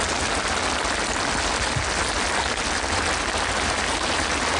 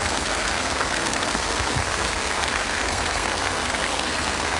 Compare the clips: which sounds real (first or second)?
first